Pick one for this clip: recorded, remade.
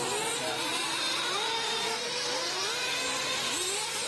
recorded